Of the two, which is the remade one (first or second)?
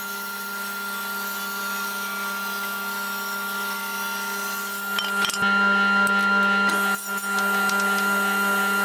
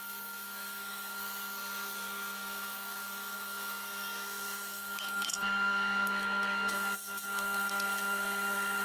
second